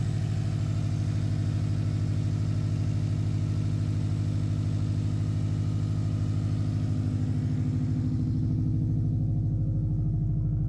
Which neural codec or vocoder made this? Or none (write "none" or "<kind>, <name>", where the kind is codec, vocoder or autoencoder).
none